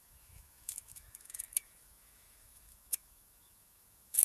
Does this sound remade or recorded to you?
remade